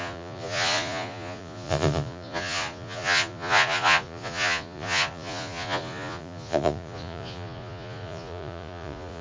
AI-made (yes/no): yes